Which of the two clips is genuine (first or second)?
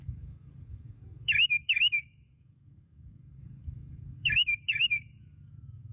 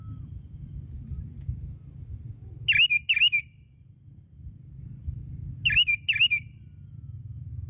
second